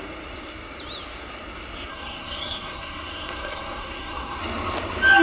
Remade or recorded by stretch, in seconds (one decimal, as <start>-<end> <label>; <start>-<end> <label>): 0.0-1.9 recorded; 1.9-4.4 remade; 4.4-5.2 recorded